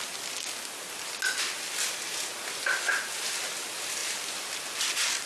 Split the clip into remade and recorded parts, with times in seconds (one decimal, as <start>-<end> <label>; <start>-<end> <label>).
0.0-5.3 recorded